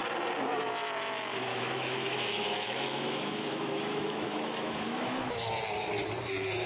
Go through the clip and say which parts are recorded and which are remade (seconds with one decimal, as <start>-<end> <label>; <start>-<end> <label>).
0.0-1.5 recorded; 1.5-5.5 remade; 5.5-6.7 recorded